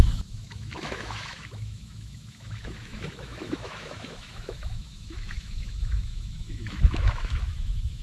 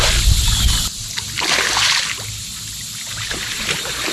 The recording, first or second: second